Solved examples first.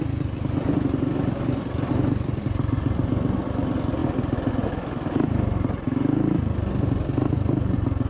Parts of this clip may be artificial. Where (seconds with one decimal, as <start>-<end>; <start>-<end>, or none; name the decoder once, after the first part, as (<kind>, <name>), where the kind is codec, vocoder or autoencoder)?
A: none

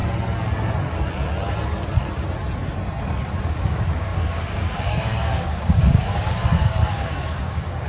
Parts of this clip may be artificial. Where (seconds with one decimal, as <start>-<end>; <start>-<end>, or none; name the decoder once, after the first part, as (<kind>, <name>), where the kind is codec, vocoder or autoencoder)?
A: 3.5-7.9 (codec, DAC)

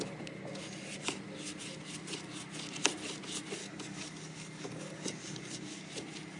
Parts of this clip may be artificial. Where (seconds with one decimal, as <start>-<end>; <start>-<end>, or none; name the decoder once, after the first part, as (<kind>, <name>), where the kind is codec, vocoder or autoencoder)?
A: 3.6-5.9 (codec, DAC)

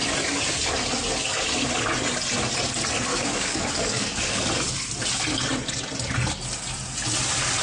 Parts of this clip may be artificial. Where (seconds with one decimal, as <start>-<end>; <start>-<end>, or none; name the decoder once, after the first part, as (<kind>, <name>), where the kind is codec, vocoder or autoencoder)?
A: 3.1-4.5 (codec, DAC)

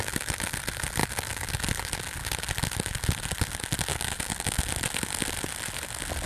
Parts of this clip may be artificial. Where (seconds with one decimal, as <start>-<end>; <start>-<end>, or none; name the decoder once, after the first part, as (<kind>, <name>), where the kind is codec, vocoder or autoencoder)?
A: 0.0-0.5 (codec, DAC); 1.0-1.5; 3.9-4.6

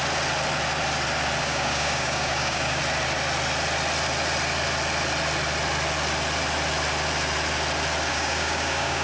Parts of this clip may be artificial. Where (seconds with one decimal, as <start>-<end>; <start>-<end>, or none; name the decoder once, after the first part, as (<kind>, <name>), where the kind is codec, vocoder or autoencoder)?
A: 1.4-2.8 (codec, DAC); 8.1-9.0

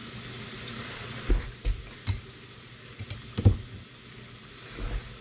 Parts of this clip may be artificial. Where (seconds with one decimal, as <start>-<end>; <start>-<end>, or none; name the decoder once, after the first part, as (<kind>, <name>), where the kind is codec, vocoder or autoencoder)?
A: none